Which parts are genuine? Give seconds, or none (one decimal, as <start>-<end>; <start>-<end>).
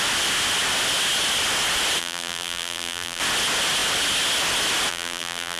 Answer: 0.0-2.0; 3.2-4.9